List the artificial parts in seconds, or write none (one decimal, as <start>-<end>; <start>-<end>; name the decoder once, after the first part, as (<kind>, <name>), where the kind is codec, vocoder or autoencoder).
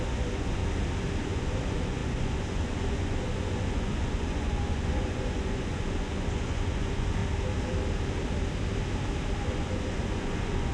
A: 0.0-0.6 (vocoder, Vocos); 1.2-7.2; 9.4-10.7